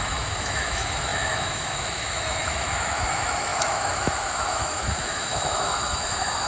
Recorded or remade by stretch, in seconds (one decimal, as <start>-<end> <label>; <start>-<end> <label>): 0.0-6.5 remade